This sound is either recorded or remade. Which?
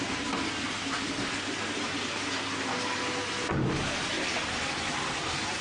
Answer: recorded